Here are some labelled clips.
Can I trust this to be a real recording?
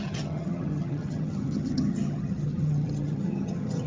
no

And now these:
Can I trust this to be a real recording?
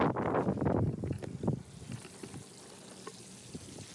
yes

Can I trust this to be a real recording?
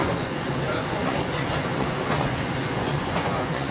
no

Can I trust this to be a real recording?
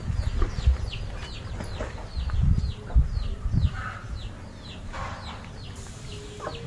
yes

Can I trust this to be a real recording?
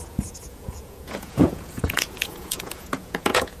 no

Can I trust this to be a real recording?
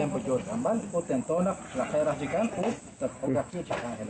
yes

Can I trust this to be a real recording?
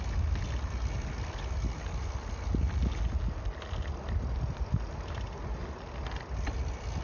yes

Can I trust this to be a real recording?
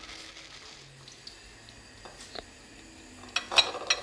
yes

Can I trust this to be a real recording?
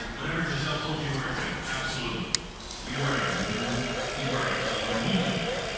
yes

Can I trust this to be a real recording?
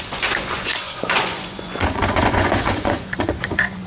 no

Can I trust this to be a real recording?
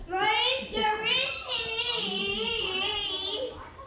yes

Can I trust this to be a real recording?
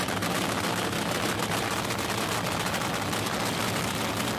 yes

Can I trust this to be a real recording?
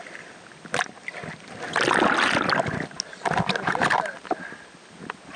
yes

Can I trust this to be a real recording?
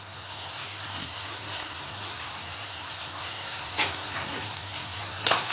no